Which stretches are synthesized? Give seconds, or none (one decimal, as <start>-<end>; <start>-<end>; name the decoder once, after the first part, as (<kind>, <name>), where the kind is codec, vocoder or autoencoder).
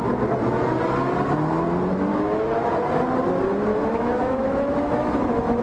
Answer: 2.1-2.7 (autoencoder, DAC-VAE); 3.7-5.6